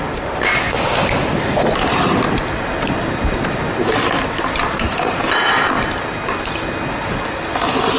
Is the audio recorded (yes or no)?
yes